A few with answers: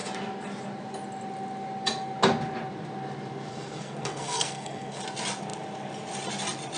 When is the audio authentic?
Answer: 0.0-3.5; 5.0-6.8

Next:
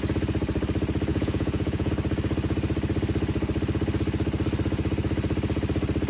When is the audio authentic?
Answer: 0.0-1.1; 1.9-6.1

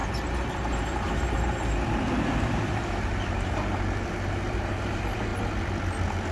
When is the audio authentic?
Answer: 5.3-6.3

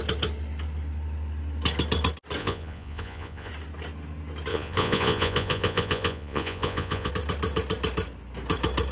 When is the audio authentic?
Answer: 0.0-2.4; 3.5-4.5; 7.1-8.9

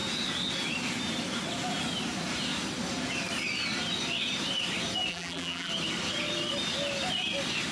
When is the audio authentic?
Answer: 0.0-5.1; 5.7-7.7

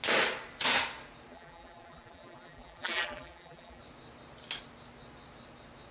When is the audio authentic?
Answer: 0.0-1.3; 3.8-5.9

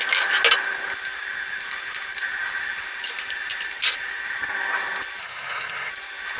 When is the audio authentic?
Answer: 0.0-5.2; 5.9-6.4